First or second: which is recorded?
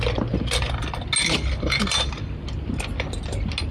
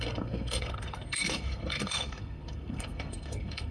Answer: first